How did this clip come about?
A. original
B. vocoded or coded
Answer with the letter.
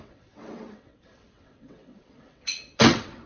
B